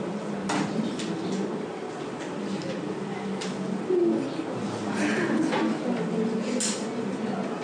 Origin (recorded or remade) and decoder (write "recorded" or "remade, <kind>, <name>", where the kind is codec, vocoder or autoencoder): recorded